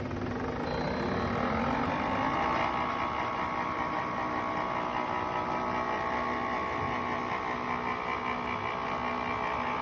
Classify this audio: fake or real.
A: real